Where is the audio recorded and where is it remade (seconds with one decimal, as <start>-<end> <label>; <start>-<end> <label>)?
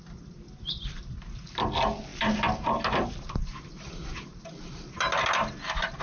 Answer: 0.0-6.0 recorded